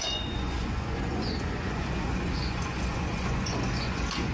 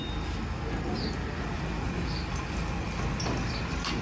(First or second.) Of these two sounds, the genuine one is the second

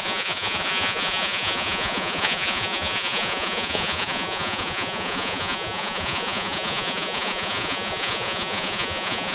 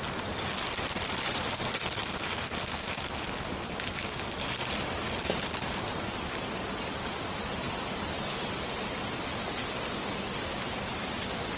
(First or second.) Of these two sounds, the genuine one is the second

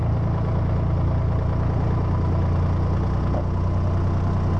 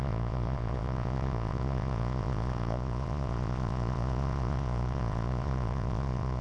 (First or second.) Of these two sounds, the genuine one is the first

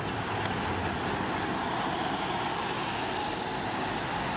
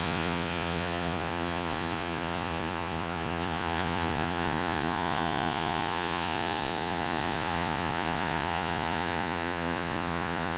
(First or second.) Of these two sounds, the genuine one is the first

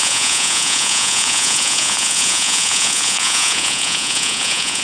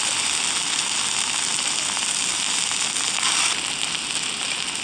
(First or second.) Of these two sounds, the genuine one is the second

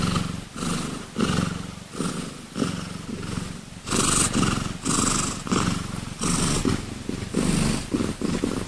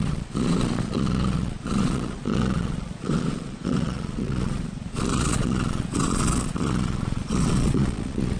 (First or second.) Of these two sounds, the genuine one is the first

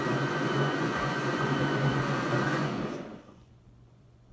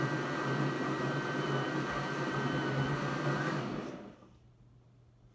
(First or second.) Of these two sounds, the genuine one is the second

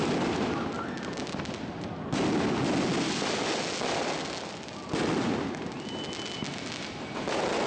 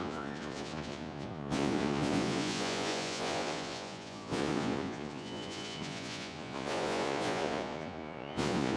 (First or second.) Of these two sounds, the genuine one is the first